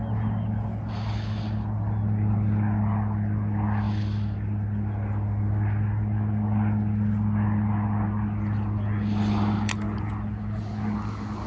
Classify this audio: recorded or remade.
recorded